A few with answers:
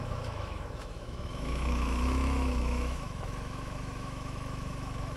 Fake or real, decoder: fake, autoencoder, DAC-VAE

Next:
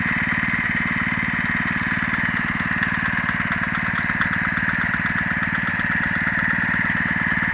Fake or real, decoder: real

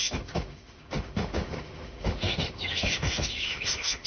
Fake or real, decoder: fake, autoencoder, DAC-VAE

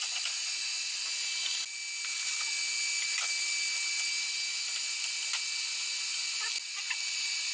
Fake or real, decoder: real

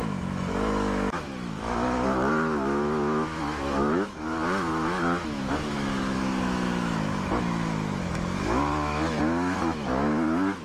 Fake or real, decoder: fake, autoencoder, DAC-VAE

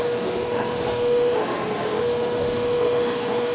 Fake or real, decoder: fake, autoencoder, DAC-VAE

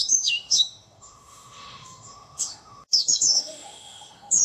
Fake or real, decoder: fake, autoencoder, DAC-VAE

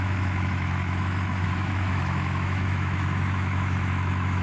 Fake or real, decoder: fake, autoencoder, DAC-VAE